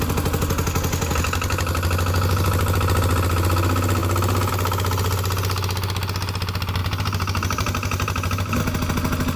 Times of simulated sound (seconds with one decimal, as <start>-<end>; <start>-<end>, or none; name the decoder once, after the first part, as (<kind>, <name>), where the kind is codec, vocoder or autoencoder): 6.8-8.6 (vocoder, BigVGAN v2)